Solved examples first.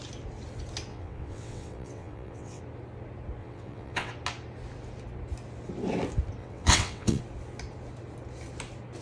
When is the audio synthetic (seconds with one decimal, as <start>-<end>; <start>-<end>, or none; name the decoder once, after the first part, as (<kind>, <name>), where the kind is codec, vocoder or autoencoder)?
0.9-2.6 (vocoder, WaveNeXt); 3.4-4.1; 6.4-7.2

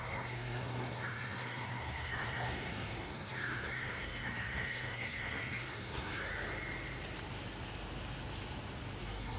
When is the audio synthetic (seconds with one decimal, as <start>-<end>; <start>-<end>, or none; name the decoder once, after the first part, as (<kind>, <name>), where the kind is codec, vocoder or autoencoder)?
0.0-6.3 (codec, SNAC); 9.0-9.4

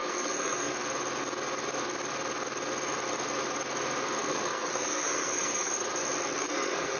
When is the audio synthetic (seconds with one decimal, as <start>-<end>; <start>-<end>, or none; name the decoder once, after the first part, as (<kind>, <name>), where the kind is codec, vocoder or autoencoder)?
0.0-0.7 (codec, SNAC); 4.2-5.7; 6.4-7.0

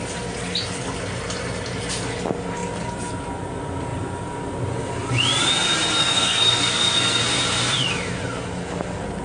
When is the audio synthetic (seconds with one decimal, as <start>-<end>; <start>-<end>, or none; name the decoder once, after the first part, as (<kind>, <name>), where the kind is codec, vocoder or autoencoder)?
6.0-7.2 (codec, SNAC)

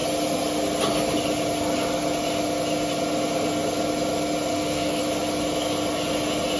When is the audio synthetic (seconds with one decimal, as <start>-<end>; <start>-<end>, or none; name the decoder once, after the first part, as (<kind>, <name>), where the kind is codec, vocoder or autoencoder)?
4.5-5.0 (codec, SNAC)

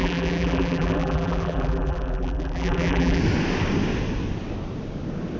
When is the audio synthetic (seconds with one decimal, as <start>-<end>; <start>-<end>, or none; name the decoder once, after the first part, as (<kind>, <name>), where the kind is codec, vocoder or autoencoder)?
0.0-3.2 (vocoder, BigVGAN v2)